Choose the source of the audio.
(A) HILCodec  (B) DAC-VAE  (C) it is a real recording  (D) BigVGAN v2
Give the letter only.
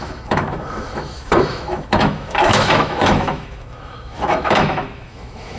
B